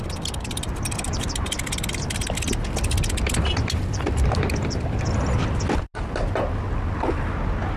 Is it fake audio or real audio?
real